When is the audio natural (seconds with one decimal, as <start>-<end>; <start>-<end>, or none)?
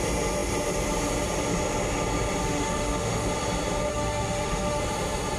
0.0-2.4; 3.3-3.9; 4.8-5.4